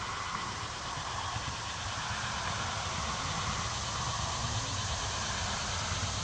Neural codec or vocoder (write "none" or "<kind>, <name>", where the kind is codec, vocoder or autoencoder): none